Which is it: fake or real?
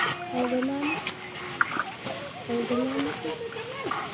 real